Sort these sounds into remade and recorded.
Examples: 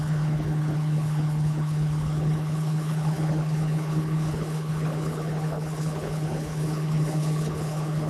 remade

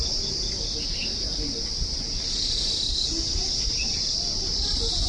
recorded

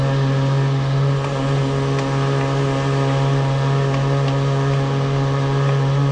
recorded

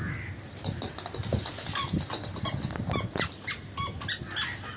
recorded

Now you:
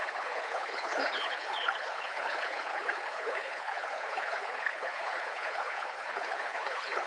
remade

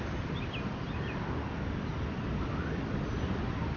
recorded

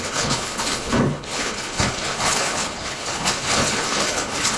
remade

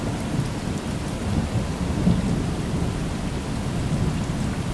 recorded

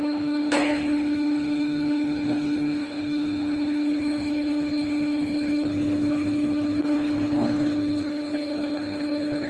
remade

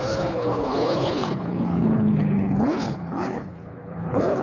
remade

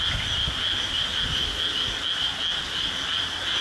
recorded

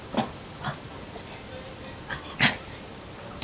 recorded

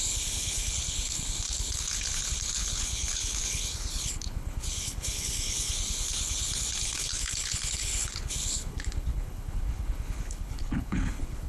remade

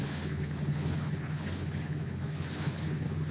remade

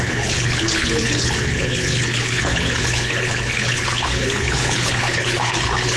remade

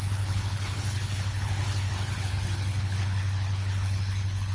remade